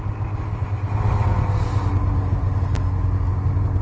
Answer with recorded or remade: recorded